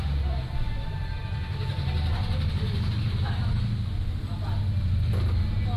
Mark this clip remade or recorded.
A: recorded